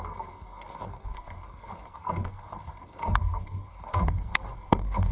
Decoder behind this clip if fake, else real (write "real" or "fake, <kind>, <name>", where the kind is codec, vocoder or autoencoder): fake, codec, SNAC